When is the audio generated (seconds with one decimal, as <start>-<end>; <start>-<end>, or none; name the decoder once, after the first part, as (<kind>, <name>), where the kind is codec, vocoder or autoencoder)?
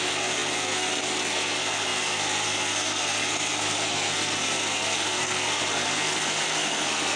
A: 0.0-7.2 (codec, SNAC)